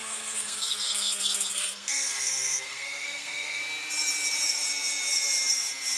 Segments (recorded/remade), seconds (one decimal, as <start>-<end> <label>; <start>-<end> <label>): 0.0-3.6 remade; 3.6-6.0 recorded